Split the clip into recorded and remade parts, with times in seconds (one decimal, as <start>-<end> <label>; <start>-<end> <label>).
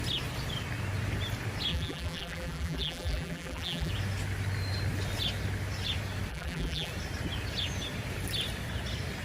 0.0-1.7 recorded; 1.7-3.9 remade; 3.9-6.3 recorded; 6.3-6.9 remade; 6.9-9.2 recorded